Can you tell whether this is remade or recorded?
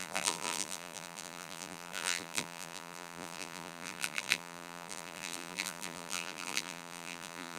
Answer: remade